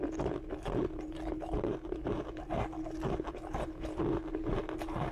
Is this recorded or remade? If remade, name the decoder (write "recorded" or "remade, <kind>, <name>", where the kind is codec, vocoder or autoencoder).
recorded